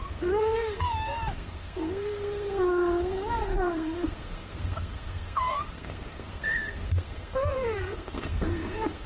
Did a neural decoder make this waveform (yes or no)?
yes